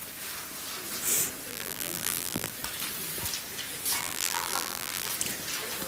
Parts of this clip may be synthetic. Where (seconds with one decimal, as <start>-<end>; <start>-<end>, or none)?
1.5-2.5; 4.0-5.1